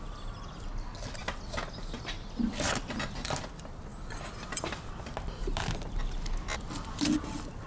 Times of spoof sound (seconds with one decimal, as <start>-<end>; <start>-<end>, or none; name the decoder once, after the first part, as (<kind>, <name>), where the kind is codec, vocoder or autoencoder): none